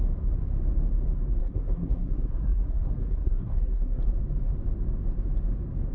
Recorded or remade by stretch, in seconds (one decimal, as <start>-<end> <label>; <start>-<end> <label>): 0.0-1.4 recorded; 1.4-4.0 remade; 4.0-5.9 recorded